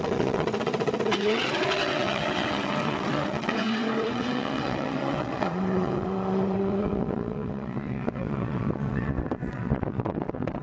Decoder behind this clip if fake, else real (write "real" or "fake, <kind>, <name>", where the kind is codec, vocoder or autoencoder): fake, vocoder, WaveNeXt